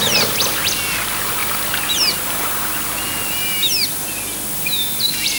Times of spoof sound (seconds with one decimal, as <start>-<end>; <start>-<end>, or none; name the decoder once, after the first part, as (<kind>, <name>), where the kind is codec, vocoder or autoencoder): none